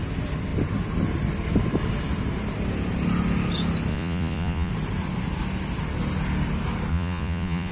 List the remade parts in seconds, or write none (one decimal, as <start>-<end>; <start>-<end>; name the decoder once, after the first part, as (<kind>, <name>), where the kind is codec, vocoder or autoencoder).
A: 3.9-4.7 (vocoder, Vocos); 6.9-7.7